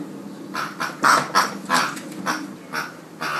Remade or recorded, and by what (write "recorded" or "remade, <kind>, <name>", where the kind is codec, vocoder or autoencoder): recorded